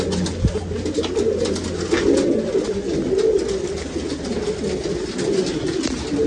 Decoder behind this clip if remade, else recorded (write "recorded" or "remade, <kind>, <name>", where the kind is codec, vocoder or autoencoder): recorded